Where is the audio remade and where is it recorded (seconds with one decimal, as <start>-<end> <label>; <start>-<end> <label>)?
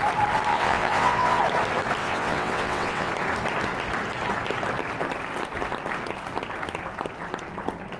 0.0-0.5 recorded; 0.5-1.4 remade; 1.4-2.0 recorded; 2.0-3.1 remade; 3.1-8.0 recorded